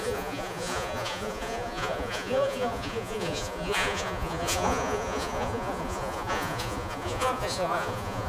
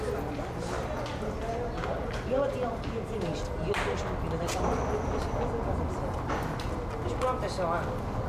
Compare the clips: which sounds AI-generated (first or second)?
first